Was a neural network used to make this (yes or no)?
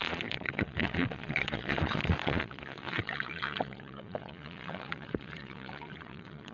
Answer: yes